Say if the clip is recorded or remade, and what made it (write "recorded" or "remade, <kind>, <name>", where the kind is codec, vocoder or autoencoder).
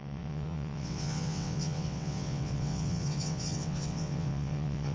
remade, vocoder, WaveNeXt